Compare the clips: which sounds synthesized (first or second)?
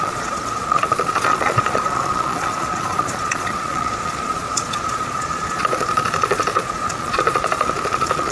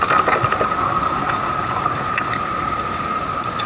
first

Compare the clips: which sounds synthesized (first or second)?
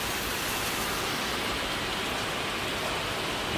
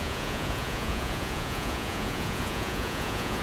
second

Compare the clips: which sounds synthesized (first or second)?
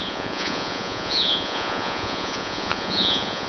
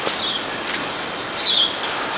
first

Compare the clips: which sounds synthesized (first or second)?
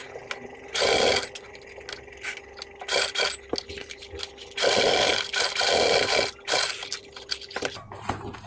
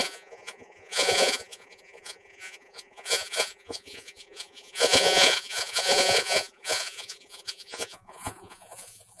second